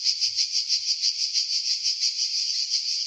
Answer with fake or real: real